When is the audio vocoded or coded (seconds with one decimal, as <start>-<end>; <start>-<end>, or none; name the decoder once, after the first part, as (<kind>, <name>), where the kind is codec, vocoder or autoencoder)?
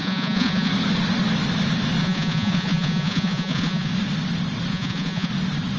0.0-0.7 (vocoder, Vocos); 2.0-3.9; 4.7-5.3